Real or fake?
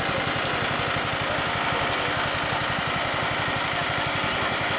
real